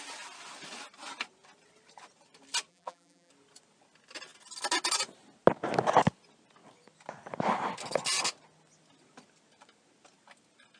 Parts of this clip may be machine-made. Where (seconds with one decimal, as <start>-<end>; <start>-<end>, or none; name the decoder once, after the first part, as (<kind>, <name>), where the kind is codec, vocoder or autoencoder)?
2.7-3.3 (vocoder, BigVGAN v2)